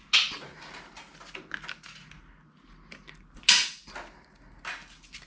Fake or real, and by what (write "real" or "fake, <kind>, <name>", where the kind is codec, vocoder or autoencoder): real